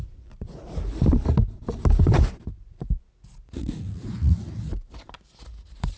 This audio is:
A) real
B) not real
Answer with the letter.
A